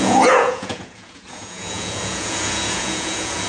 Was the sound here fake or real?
fake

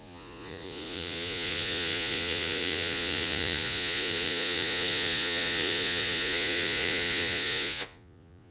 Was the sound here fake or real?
fake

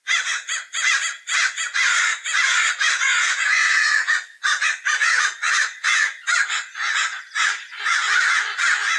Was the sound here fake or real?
fake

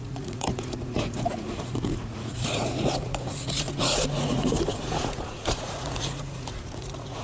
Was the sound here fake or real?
fake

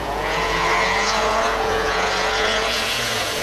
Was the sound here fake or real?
fake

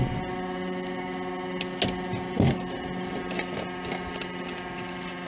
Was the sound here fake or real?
real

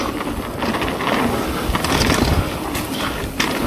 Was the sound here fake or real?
real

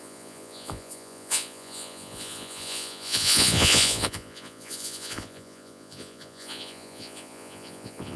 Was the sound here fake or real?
fake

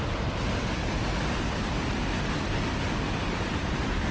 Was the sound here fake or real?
real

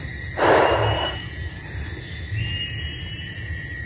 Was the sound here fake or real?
real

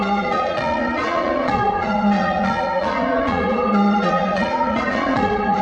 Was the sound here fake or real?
fake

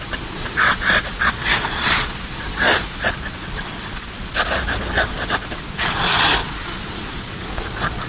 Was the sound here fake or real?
fake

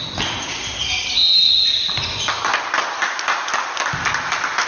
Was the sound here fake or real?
real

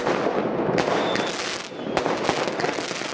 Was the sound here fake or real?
real